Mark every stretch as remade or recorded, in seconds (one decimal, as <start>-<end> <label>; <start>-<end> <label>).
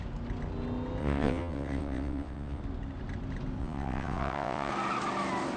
0.0-1.0 recorded; 1.0-2.6 remade; 2.6-3.6 recorded; 3.6-4.7 remade; 4.7-5.6 recorded